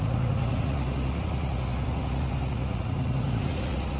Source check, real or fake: fake